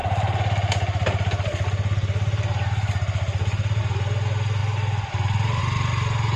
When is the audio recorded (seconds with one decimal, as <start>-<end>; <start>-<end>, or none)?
0.0-6.4